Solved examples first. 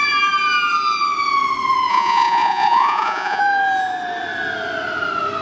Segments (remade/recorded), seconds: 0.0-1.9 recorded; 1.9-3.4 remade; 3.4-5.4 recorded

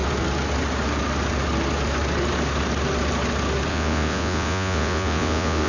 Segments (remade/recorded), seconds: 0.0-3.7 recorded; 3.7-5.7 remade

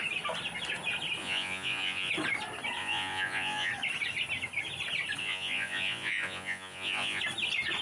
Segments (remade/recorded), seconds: 0.0-1.2 recorded; 1.2-2.1 remade; 2.1-2.8 recorded; 2.8-3.7 remade; 3.7-5.2 recorded; 5.2-7.2 remade; 7.2-7.8 recorded